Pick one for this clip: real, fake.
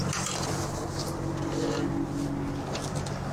real